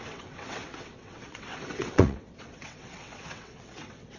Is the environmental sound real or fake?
fake